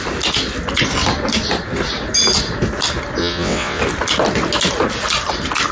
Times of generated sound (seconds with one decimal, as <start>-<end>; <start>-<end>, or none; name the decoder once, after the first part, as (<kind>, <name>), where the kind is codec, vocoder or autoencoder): 3.2-3.8 (vocoder, WaveNeXt)